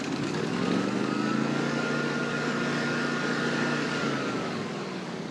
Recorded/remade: remade